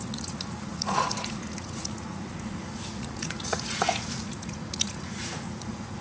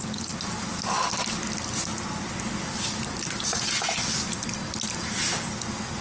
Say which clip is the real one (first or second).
second